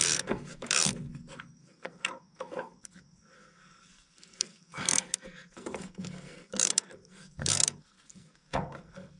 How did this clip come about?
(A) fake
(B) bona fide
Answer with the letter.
A